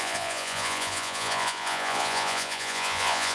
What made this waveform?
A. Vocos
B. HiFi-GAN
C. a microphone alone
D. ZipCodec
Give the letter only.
A